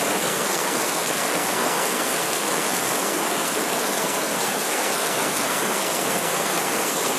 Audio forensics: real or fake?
fake